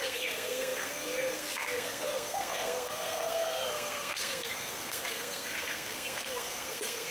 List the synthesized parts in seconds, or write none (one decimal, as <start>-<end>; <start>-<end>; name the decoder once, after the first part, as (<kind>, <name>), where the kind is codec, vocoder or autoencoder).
0.0-7.1 (codec, SNAC)